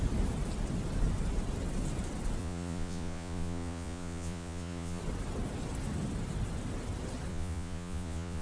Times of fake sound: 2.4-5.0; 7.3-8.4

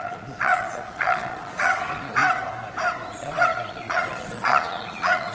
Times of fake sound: 0.0-2.2; 3.2-5.3

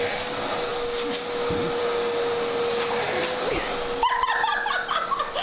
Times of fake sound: none

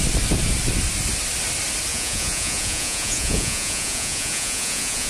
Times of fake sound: 1.9-5.1

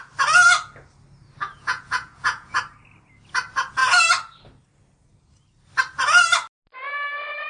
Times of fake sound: 1.4-2.6

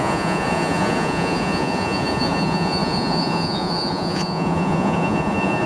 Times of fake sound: 0.0-5.7

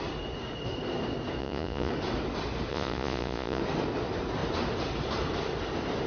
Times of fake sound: 1.4-1.9; 2.7-3.6